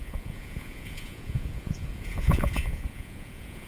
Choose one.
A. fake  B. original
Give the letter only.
A